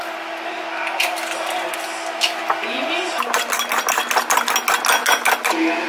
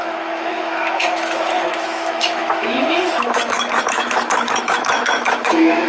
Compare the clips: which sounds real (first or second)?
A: first